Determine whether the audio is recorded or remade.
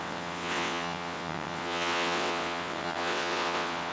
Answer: remade